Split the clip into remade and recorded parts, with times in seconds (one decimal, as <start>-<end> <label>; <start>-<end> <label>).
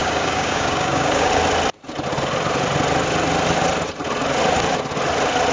0.0-1.3 remade; 1.3-5.5 recorded